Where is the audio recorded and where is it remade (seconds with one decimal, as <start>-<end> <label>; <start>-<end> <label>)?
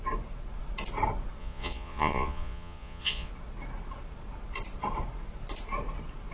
0.0-1.4 recorded; 1.4-3.3 remade; 3.3-6.3 recorded